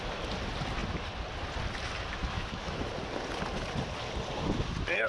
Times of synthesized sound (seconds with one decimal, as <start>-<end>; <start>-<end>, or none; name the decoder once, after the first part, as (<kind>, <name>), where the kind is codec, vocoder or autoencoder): 2.2-2.9 (autoencoder, DAC-VAE)